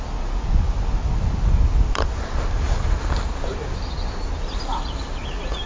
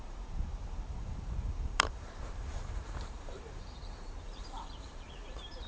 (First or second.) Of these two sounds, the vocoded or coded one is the second